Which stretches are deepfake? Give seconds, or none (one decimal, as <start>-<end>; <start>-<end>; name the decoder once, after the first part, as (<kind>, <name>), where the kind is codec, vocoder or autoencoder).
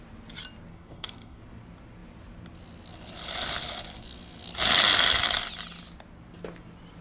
0.7-1.4 (codec, SNAC)